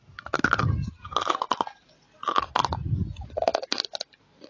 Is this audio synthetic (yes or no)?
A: no